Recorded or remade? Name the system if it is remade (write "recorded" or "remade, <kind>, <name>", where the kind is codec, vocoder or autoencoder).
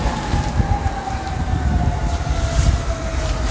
recorded